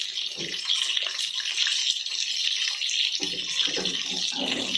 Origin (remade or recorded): recorded